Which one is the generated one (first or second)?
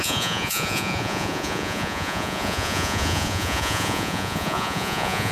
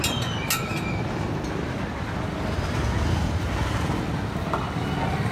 first